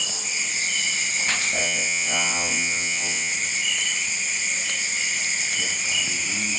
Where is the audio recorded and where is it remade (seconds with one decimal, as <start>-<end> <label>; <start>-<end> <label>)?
0.0-1.6 recorded; 1.6-3.3 remade; 3.3-6.6 recorded